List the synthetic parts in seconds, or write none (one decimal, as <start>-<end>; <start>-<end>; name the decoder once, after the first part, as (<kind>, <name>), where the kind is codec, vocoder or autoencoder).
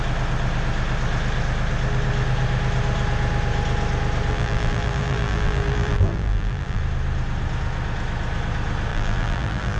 4.3-6.8 (vocoder, BigVGAN v2); 8.9-9.8